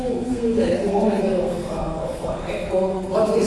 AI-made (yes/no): yes